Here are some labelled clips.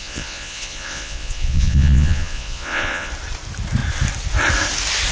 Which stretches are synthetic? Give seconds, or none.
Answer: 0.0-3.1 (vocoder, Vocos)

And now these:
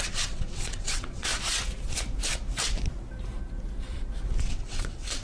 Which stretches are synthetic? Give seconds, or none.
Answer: 0.0-1.3 (vocoder, WaveNeXt); 4.4-5.2

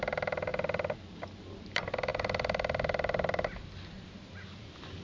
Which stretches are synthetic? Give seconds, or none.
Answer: 2.1-4.3 (vocoder, BigVGAN v2)

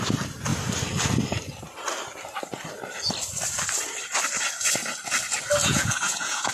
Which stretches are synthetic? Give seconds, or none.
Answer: 5.6-6.5 (vocoder, Vocos)

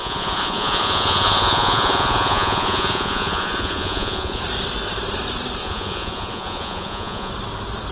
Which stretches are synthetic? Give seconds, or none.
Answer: 0.0-4.4 (vocoder, Vocos); 5.6-7.3

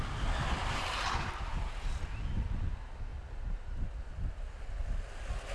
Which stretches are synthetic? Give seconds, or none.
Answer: 0.6-2.6 (vocoder, BigVGAN v2); 3.1-4.1

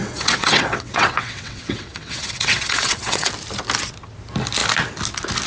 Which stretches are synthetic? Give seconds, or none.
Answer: 0.0-3.3 (vocoder, WaveNeXt)

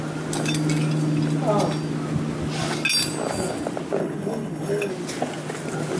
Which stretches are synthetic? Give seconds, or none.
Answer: 4.0-4.9 (codec, HILCodec)